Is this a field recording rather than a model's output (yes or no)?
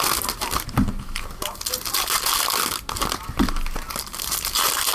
yes